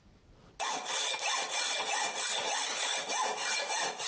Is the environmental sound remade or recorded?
recorded